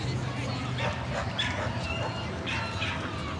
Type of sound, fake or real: real